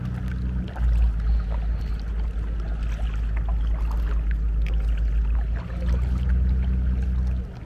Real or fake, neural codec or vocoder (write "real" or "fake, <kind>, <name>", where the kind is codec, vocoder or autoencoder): real